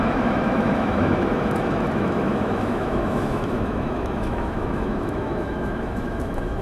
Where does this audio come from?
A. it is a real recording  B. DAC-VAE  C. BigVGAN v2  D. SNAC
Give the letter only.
B